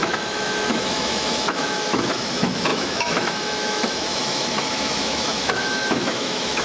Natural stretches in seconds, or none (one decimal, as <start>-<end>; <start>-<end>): none